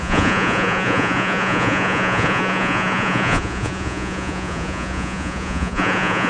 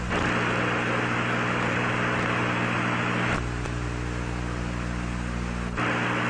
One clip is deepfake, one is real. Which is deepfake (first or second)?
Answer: first